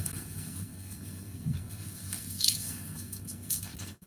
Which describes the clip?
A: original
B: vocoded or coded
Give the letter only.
B